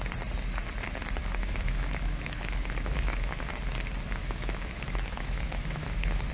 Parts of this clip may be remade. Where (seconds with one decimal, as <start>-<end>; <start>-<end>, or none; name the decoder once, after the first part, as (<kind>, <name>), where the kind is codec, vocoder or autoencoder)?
1.2-3.4 (autoencoder, DAC-VAE); 4.2-6.3